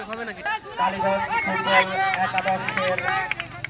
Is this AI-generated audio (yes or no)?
no